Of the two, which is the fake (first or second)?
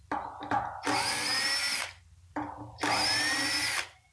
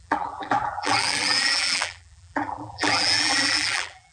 second